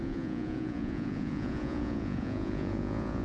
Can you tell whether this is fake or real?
fake